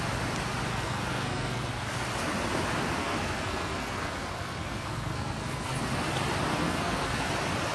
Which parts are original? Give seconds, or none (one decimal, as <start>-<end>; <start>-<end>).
0.0-0.7; 1.7-3.0; 5.8-6.5; 7.3-7.7